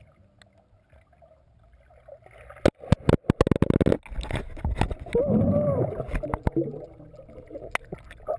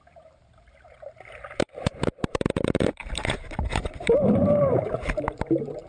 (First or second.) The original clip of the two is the first